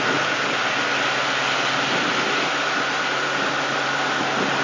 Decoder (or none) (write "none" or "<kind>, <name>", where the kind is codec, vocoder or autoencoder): none